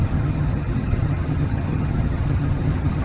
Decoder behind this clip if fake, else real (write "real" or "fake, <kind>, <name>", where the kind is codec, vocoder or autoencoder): fake, vocoder, HiFi-GAN